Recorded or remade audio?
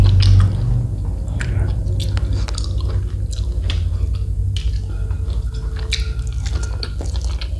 recorded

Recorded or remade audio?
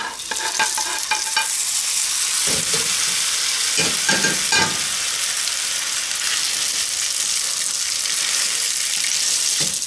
recorded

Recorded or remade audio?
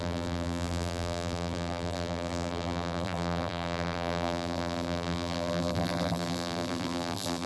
remade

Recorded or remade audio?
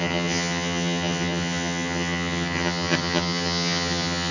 remade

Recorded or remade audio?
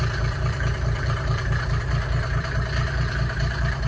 remade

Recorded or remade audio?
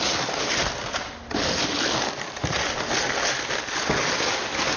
recorded